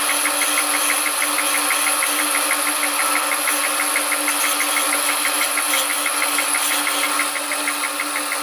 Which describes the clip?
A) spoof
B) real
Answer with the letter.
B